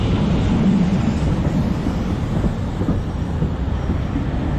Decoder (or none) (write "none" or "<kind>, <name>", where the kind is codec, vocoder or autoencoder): none